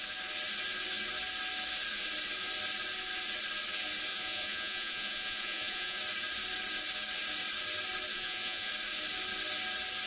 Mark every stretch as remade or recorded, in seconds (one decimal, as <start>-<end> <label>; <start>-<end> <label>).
0.0-4.1 recorded; 4.1-6.0 remade; 6.0-8.1 recorded; 8.1-8.7 remade; 8.7-10.1 recorded